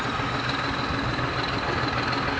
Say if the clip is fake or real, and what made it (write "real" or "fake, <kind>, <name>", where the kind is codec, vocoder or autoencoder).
real